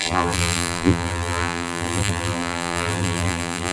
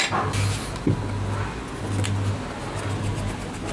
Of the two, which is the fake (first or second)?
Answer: first